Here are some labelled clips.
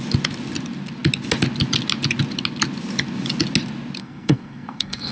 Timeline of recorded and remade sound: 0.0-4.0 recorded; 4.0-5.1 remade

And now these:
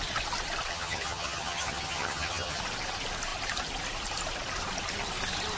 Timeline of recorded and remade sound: 0.0-0.7 recorded; 0.7-2.6 remade; 2.6-5.6 recorded

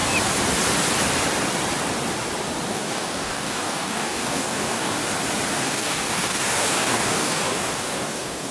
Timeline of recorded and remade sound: 0.0-2.7 recorded; 2.7-5.0 remade; 5.0-5.5 recorded; 5.5-8.5 remade